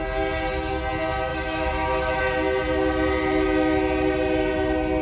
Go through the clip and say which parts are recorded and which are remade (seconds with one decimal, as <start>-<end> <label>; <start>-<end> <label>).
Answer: 0.0-1.3 recorded; 1.3-2.2 remade; 2.2-5.0 recorded